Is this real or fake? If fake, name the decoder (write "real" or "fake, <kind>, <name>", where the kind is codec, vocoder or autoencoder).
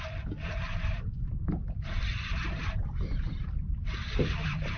fake, vocoder, BigVGAN v2